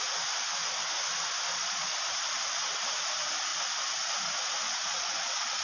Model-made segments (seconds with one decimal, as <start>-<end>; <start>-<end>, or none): 1.5-2.0; 4.9-5.6